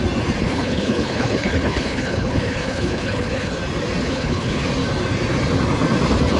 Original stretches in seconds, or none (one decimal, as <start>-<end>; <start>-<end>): 0.0-0.4; 3.6-4.0; 4.6-6.4